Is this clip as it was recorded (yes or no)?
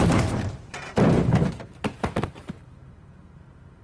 no